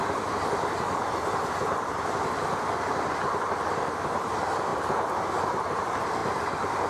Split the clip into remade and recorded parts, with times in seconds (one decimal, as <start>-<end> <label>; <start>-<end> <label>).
0.0-6.9 recorded